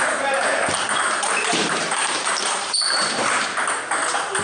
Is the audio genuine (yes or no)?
no